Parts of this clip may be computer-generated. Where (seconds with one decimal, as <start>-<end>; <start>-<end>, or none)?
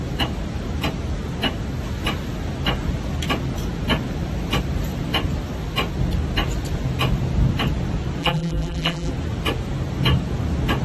8.2-9.1